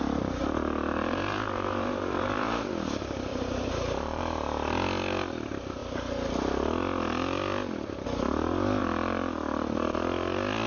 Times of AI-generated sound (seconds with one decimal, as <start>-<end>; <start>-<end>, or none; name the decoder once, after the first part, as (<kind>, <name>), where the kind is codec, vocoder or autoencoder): 0.4-2.7 (vocoder, BigVGAN v2); 3.3-4.2